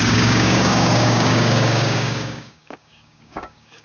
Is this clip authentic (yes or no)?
no